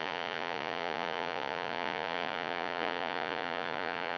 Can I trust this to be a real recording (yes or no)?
no